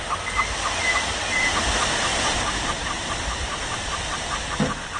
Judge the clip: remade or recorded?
remade